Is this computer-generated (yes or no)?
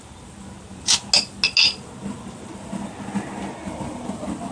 no